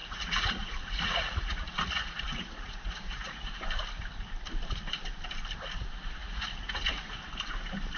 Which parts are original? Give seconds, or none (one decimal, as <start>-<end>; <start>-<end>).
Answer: 3.5-6.2; 7.2-8.0